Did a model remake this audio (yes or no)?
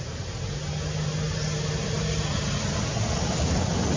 no